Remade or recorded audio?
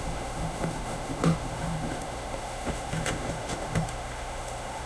remade